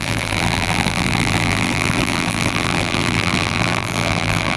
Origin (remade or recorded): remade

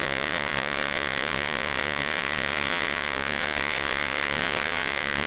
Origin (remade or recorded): remade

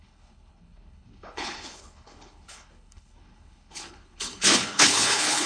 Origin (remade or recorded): remade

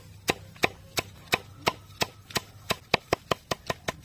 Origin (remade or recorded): recorded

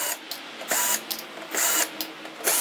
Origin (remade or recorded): recorded